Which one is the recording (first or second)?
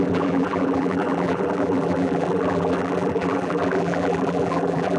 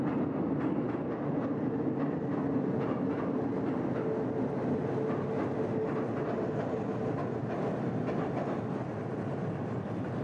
second